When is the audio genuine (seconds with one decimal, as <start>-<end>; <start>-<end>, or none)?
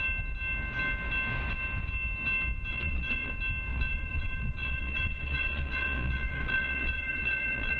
0.0-2.7; 3.3-3.7